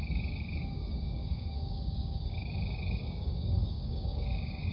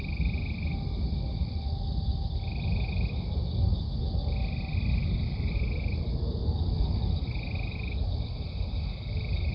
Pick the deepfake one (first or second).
first